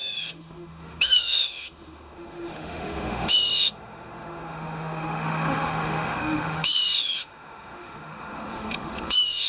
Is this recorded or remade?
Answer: remade